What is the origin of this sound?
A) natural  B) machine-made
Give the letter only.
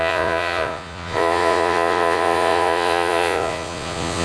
B